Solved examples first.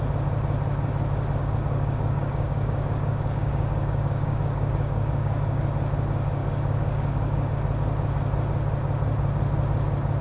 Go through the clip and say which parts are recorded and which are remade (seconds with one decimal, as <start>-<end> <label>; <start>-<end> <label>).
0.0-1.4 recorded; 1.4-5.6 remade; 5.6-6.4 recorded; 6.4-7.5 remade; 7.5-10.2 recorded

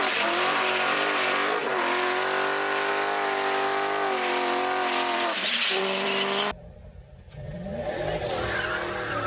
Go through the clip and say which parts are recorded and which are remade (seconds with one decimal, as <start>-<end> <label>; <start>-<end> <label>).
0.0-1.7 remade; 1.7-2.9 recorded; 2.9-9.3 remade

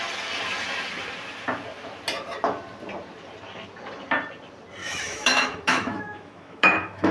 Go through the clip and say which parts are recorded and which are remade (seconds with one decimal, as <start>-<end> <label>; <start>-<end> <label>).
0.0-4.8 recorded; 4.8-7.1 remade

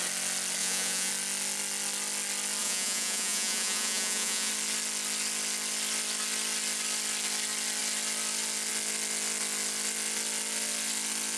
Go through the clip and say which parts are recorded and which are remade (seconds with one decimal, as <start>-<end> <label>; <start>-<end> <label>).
0.0-0.6 recorded; 0.6-1.1 remade; 1.1-2.6 recorded; 2.6-4.5 remade; 4.5-11.4 recorded